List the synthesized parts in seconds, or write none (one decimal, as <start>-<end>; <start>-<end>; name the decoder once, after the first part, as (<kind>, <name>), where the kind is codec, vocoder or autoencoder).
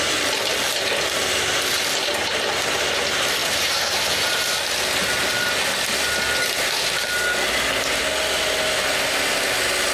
none